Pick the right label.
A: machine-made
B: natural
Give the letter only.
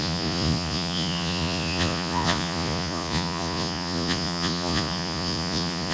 A